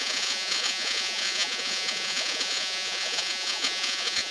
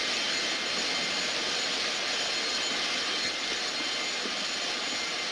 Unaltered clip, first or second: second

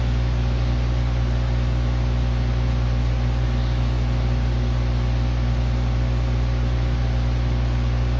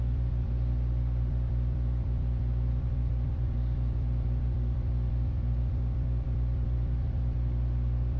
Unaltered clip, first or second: first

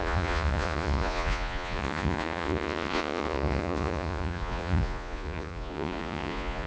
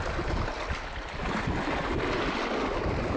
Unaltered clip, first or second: second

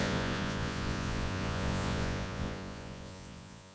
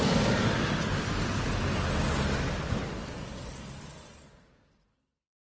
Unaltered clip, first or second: second